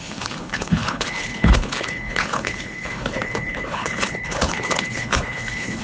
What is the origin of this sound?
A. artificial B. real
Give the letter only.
A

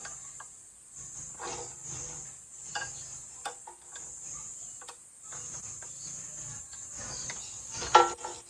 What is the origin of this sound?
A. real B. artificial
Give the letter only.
A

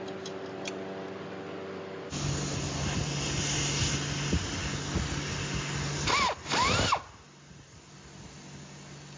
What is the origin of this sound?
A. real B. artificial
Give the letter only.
A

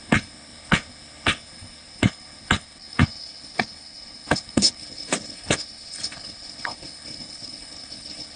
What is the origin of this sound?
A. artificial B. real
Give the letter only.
A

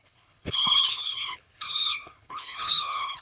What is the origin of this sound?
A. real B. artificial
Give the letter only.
B